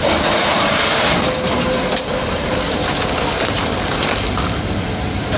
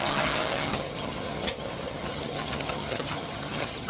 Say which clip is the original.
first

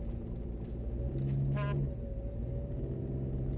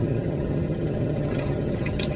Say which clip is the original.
first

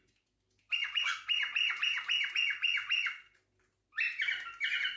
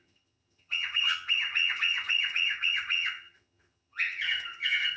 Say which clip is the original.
first